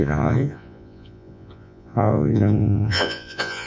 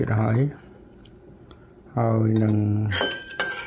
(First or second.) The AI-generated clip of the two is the first